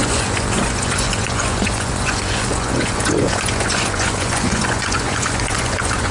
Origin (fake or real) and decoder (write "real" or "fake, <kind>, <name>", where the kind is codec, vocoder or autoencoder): fake, vocoder, Vocos